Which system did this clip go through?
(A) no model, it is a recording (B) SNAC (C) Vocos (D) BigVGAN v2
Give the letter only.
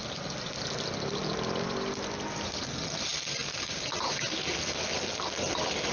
A